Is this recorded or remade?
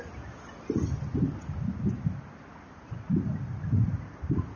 recorded